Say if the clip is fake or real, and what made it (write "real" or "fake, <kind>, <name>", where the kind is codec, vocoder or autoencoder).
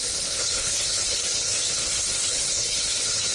fake, codec, HILCodec